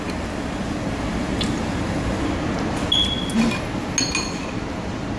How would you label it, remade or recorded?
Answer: recorded